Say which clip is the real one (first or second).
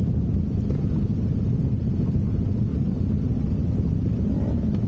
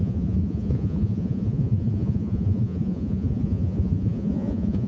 first